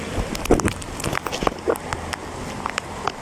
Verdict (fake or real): real